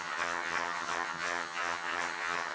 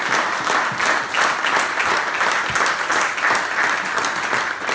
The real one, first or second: second